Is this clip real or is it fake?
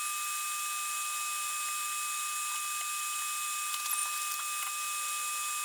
real